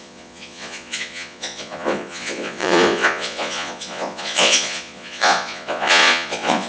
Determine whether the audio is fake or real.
fake